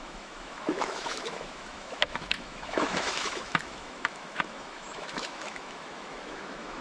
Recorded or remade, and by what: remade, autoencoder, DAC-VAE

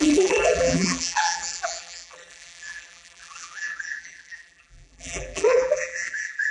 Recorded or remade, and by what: remade, vocoder, BigVGAN v2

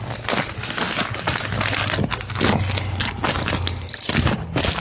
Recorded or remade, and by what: recorded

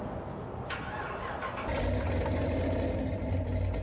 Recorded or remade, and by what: recorded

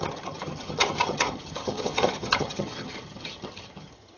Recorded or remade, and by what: remade, vocoder, HiFi-GAN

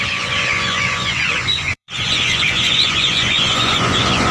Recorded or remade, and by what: remade, vocoder, Vocos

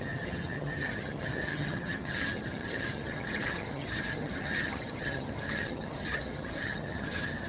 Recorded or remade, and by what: remade, vocoder, HiFi-GAN